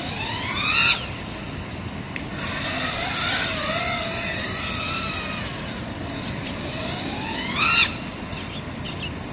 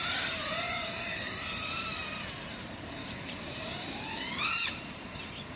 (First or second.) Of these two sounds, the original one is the first